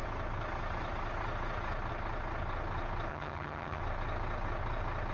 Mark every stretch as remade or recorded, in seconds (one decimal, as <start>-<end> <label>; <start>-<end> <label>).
0.0-3.1 recorded; 3.1-3.8 remade; 3.8-5.1 recorded